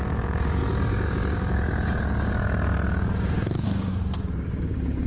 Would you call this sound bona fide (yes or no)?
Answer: no